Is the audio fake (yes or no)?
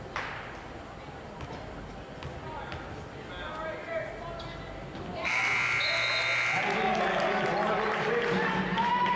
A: no